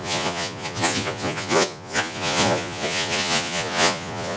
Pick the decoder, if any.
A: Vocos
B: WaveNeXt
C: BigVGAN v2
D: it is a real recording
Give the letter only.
A